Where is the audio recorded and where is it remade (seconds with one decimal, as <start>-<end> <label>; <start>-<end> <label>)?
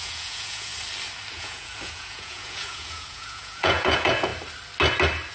0.0-0.7 remade; 0.7-1.3 recorded; 1.3-4.3 remade; 4.3-5.3 recorded